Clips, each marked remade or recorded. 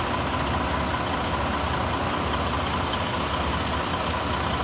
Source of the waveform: recorded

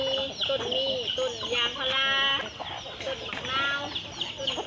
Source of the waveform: recorded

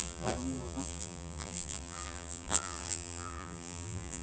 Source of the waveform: remade